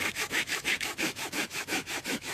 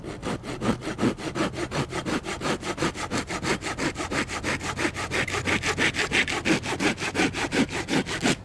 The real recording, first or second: second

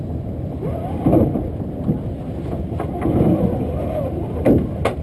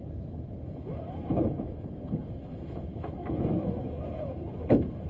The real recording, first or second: first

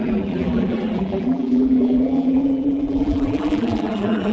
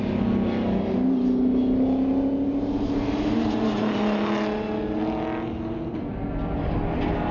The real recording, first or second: second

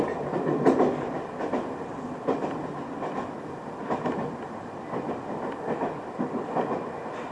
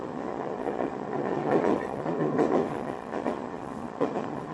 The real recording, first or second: first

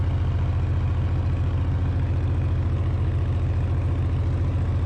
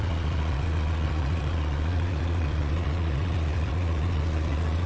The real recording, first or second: first